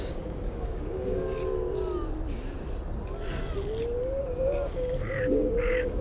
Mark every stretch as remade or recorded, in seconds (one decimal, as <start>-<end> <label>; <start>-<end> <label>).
0.0-1.4 remade; 1.4-4.2 recorded; 4.2-6.0 remade